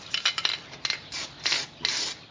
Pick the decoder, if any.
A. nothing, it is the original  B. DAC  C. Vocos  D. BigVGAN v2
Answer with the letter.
A